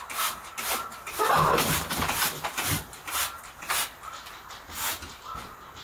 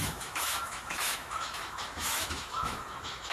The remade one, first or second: second